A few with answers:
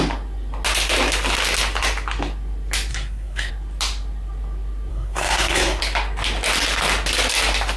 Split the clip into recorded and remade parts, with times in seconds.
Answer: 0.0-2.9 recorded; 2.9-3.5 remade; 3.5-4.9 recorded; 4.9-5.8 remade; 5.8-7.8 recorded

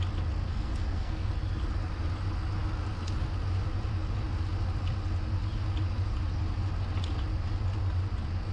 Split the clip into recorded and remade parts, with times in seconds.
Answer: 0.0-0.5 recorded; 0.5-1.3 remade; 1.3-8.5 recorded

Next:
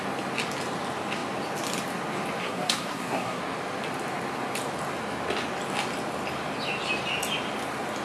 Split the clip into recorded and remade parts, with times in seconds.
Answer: 0.0-2.4 recorded; 2.4-3.4 remade; 3.4-8.0 recorded

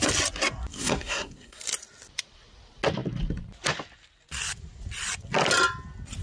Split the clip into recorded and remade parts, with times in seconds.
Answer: 0.0-0.7 recorded; 0.7-1.6 remade; 1.6-6.2 recorded

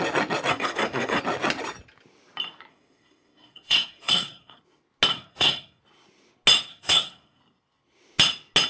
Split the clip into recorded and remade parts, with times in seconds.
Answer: 0.0-0.5 recorded; 0.5-1.2 remade; 1.2-2.7 recorded; 2.7-4.6 remade; 4.6-5.1 recorded; 5.1-5.8 remade; 5.8-6.7 recorded; 6.7-7.4 remade; 7.4-8.7 recorded

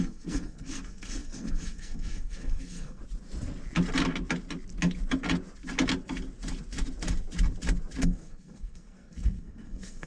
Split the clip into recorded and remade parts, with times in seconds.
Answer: 0.0-3.0 remade; 3.0-8.0 recorded; 8.0-10.1 remade